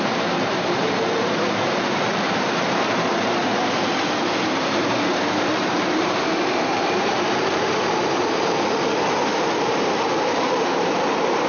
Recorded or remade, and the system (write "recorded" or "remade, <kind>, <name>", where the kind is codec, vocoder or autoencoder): remade, vocoder, BigVGAN v2